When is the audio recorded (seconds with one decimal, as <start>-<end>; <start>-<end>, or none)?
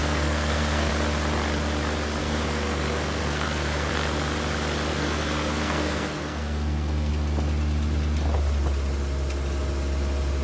0.9-2.2; 3.9-4.9; 7.1-10.4